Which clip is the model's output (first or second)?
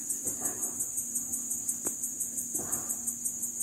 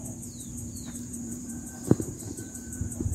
second